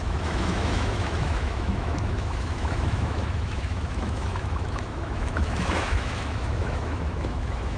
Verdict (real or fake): fake